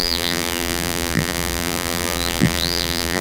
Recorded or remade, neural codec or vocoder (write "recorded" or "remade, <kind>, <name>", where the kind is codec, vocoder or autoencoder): remade, vocoder, BigVGAN v2